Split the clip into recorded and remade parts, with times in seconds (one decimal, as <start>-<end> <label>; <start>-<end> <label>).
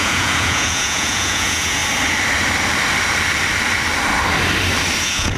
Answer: 0.0-1.8 remade; 1.8-5.0 recorded; 5.0-5.4 remade